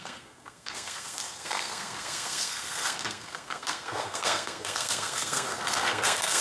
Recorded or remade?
remade